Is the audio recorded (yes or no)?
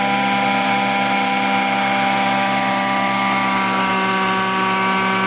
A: yes